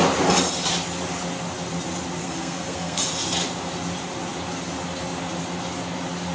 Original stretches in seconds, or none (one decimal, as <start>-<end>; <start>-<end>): 0.0-2.2; 3.0-6.3